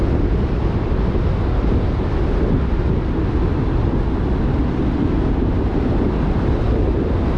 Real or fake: real